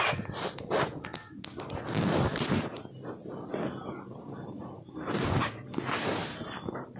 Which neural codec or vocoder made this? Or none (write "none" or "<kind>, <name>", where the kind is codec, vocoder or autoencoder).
none